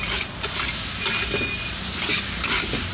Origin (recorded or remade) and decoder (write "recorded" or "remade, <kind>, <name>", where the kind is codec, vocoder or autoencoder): recorded